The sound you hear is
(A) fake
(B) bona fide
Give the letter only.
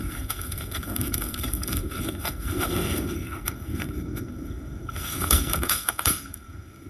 A